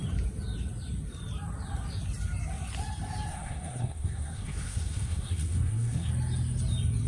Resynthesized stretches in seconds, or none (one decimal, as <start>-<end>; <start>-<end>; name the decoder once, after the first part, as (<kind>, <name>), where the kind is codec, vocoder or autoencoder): 3.3-6.1 (codec, SNAC)